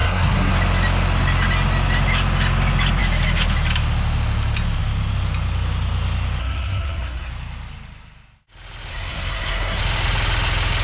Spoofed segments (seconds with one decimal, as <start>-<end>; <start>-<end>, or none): 0.0-0.5; 6.4-7.3; 8.9-9.8